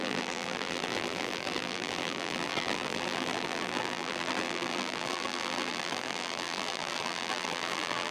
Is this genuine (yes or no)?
no